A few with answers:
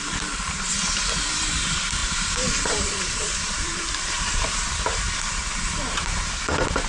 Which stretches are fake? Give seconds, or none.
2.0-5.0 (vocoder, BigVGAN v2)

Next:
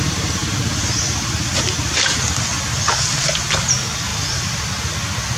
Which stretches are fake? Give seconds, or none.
0.0-0.4 (vocoder, BigVGAN v2); 1.3-4.1

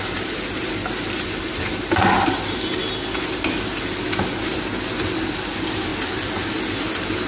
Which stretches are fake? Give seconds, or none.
none

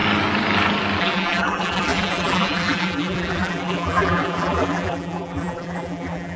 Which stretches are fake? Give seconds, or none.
1.0-6.4 (vocoder, BigVGAN v2)

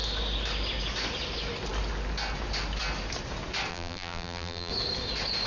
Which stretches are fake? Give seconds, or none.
3.7-4.7 (vocoder, BigVGAN v2)

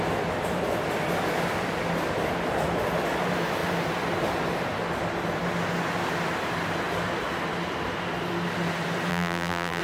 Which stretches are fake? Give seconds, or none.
9.1-9.8 (vocoder, BigVGAN v2)

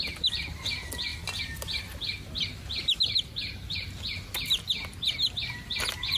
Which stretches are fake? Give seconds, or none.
none

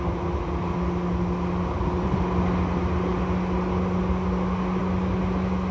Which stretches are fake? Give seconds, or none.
none